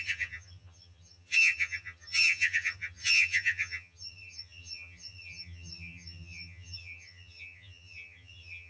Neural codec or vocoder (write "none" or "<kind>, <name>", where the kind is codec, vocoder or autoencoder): vocoder, HiFi-GAN